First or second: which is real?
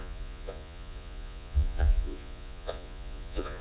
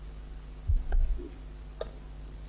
second